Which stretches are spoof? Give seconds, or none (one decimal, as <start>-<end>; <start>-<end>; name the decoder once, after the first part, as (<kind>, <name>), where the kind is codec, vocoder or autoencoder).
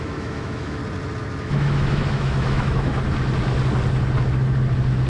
0.0-0.8 (autoencoder, DAC-VAE); 1.4-2.9